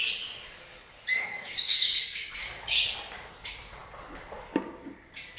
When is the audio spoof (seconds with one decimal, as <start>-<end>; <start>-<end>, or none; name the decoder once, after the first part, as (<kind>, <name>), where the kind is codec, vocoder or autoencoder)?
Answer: 0.7-3.3 (codec, DAC)